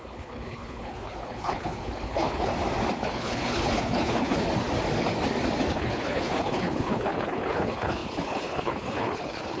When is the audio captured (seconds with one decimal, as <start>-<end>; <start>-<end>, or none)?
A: 2.5-3.0; 4.5-5.7